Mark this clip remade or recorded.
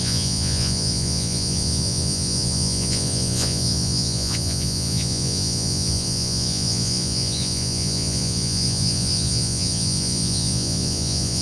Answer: remade